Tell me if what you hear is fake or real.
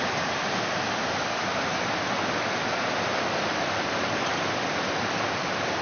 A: real